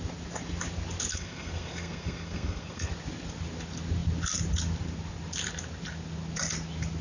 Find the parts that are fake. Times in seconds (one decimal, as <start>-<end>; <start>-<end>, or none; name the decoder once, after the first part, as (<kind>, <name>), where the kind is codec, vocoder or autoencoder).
1.1-2.9 (codec, SNAC)